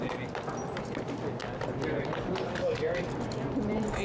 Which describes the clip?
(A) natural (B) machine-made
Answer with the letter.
A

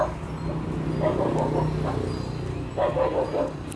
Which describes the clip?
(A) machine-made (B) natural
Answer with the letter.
B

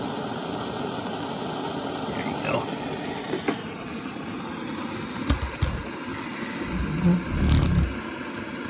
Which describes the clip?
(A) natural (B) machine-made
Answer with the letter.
A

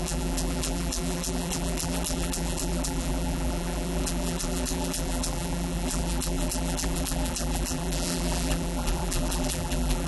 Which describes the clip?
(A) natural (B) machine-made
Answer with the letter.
B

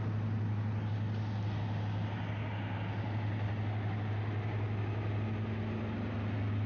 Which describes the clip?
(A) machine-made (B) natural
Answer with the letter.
B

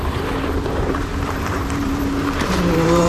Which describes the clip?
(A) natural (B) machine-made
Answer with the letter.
B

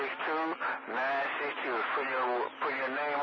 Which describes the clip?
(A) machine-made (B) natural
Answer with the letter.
B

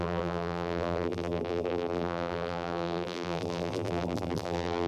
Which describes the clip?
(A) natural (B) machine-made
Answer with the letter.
B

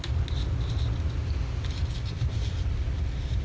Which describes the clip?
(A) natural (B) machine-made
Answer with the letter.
A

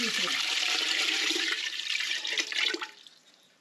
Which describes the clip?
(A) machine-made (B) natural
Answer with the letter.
A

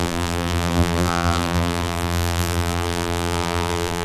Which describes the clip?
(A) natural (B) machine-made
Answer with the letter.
B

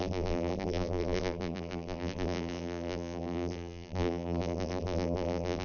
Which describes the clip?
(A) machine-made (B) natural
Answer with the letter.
A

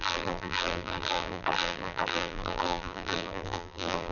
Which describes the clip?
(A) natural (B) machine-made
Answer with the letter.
B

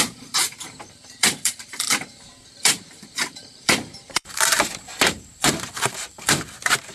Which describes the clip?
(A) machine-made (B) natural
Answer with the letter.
A